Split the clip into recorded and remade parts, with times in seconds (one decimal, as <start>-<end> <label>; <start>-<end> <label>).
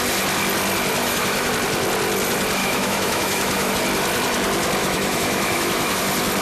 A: 0.0-1.0 recorded; 1.0-1.5 remade; 1.5-2.6 recorded; 2.6-3.7 remade; 3.7-4.8 recorded; 4.8-6.0 remade; 6.0-6.4 recorded